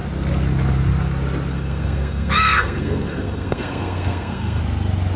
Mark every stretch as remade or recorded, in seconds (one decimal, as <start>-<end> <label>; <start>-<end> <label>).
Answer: 0.0-1.5 recorded; 1.5-4.6 remade; 4.6-5.2 recorded